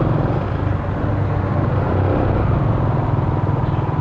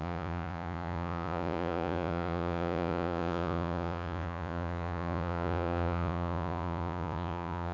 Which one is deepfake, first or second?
second